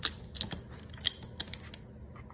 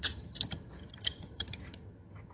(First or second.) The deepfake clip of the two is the second